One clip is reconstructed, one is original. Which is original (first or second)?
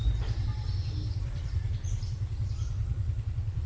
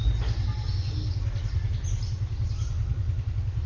second